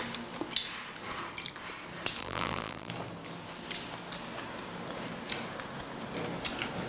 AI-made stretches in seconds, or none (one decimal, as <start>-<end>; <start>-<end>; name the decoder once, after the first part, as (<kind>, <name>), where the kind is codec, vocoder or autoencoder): 2.2-2.9 (vocoder, BigVGAN v2)